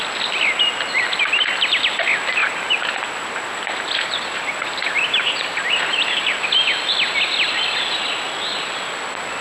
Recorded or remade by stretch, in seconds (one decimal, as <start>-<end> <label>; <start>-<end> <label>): 0.0-2.4 recorded; 2.4-6.0 remade; 6.0-9.4 recorded